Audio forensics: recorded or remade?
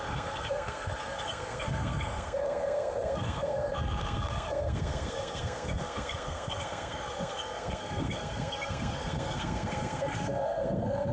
remade